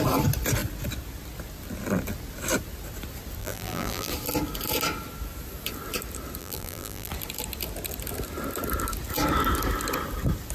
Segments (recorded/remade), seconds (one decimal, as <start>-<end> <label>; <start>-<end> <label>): 0.0-3.4 recorded; 3.4-4.1 remade; 4.1-6.4 recorded; 6.4-7.1 remade; 7.1-10.5 recorded

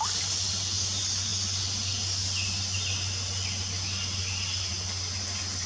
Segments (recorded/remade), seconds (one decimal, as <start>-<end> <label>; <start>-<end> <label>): 0.0-1.3 recorded; 1.3-4.7 remade; 4.7-5.7 recorded

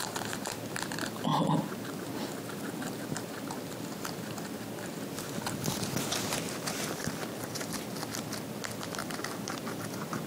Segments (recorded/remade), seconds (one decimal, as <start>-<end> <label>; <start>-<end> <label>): 0.0-7.0 recorded; 7.0-8.2 remade; 8.2-9.0 recorded; 9.0-9.8 remade; 9.8-10.3 recorded

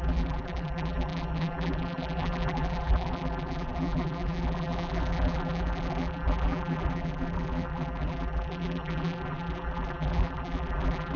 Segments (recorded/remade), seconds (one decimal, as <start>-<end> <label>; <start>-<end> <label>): 0.0-11.2 remade

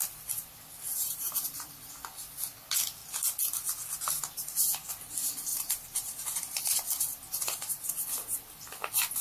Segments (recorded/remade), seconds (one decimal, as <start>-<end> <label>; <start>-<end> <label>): 0.0-0.9 recorded; 0.9-1.9 remade; 1.9-5.5 recorded; 5.5-6.6 remade; 6.6-9.2 recorded

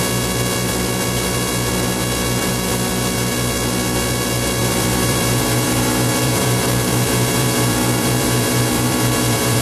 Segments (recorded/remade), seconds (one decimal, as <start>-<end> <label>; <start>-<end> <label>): 0.0-4.6 recorded; 4.6-9.6 remade

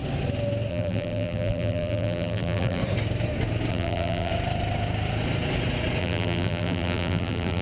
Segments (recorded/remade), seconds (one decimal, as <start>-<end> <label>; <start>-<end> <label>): 0.0-0.7 recorded; 0.7-2.8 remade; 2.8-3.7 recorded; 3.7-4.3 remade; 4.3-6.0 recorded; 6.0-7.6 remade